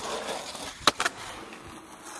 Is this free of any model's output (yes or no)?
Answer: yes